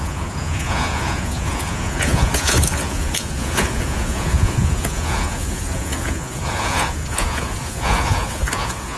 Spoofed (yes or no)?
yes